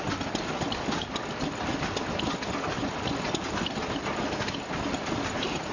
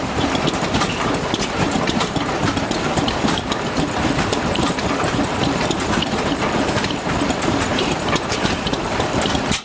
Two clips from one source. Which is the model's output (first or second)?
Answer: second